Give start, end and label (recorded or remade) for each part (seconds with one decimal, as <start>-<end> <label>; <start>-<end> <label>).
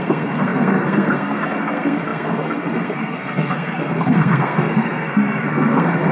0.0-6.1 remade